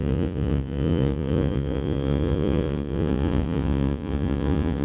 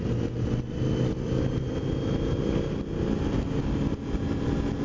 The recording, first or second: second